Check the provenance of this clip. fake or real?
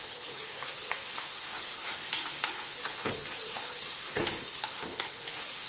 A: fake